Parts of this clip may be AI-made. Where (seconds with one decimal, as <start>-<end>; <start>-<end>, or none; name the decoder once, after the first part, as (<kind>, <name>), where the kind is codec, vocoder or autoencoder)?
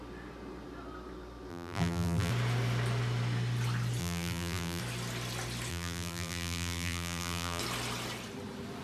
1.5-2.3 (vocoder, BigVGAN v2); 4.0-4.8; 5.7-7.6